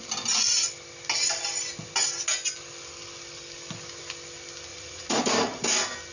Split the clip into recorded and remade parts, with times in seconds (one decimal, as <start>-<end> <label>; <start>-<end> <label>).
0.0-4.7 recorded; 4.7-5.2 remade; 5.2-6.1 recorded